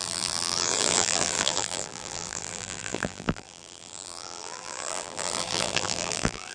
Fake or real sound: fake